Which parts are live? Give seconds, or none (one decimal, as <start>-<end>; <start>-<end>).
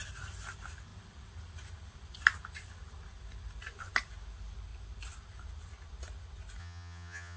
0.0-6.6